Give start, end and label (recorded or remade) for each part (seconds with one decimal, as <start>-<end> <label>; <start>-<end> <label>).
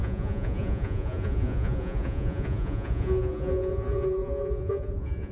0.0-5.3 remade